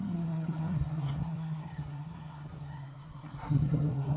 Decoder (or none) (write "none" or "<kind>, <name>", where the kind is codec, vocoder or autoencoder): codec, SNAC